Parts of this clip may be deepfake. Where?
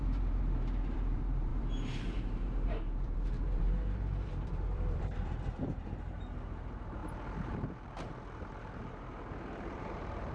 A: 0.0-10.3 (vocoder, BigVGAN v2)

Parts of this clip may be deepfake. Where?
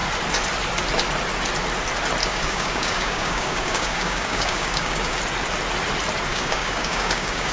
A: 2.2-5.2 (codec, DAC); 6.3-7.5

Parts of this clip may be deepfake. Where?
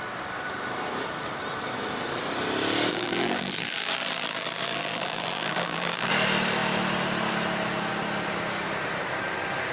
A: 2.9-6.1 (vocoder, BigVGAN v2)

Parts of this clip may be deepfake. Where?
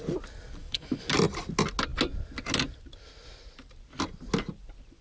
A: 0.6-1.1 (autoencoder, DAC-VAE)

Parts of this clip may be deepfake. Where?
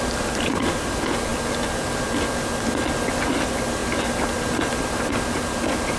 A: none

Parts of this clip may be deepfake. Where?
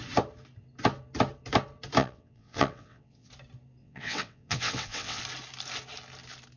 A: 2.0-3.3 (vocoder, WaveNeXt); 3.8-5.2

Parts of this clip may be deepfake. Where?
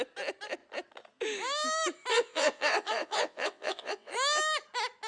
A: 2.1-4.1 (vocoder, WaveNeXt)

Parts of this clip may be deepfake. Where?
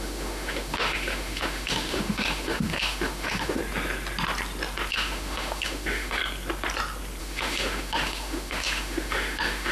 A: 0.0-3.6 (autoencoder, DAC-VAE); 4.9-6.2; 7.2-9.7